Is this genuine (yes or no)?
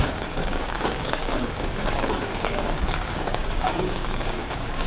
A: no